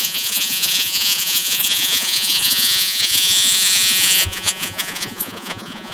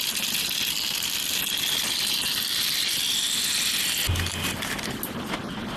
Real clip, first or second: second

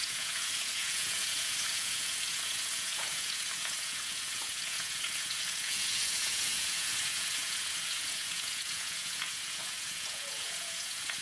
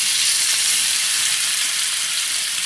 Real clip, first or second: second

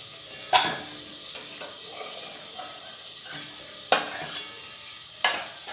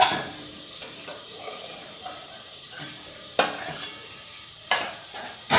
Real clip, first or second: first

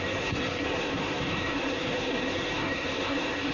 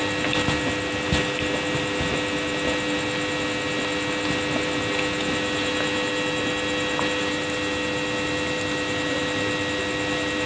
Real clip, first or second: second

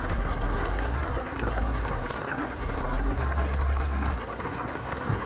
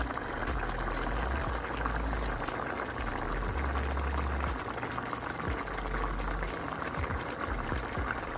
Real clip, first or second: second